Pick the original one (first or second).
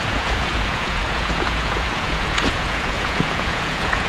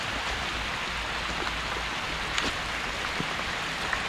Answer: second